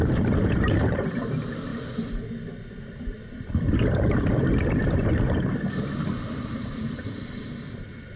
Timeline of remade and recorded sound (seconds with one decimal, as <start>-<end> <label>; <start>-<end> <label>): 0.0-1.7 remade; 1.7-6.4 recorded; 6.4-8.2 remade